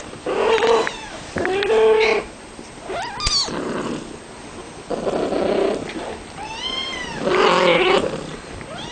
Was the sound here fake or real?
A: real